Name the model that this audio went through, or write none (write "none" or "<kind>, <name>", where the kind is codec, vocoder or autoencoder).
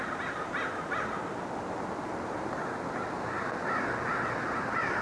none